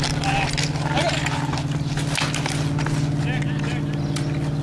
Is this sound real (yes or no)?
yes